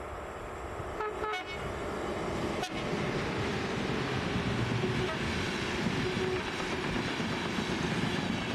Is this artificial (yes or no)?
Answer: no